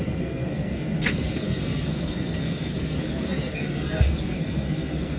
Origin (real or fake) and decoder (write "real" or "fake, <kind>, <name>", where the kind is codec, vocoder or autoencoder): fake, codec, SNAC